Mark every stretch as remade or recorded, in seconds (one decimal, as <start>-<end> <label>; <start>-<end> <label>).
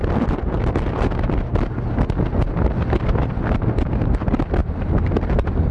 0.0-4.6 recorded; 4.6-5.7 remade